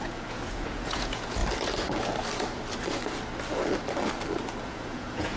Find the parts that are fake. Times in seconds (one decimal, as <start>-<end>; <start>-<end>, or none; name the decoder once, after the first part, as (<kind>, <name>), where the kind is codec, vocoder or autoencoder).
0.0-1.4 (vocoder, Vocos); 4.6-5.4